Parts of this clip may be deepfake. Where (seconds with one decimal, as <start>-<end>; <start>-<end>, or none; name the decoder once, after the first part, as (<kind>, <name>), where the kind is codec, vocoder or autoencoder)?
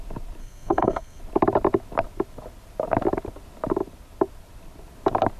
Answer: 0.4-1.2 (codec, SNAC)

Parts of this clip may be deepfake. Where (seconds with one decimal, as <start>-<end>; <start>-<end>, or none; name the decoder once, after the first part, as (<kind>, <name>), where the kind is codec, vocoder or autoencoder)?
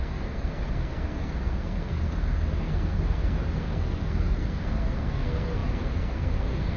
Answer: 0.0-6.8 (codec, SNAC)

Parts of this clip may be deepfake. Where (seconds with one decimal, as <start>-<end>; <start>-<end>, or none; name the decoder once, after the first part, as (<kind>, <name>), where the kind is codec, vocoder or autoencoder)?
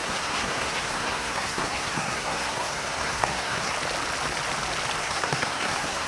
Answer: 0.0-3.7 (codec, SNAC); 5.0-6.1